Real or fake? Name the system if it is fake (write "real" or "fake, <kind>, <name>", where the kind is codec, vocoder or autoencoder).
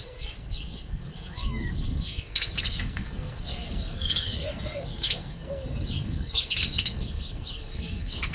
fake, codec, SNAC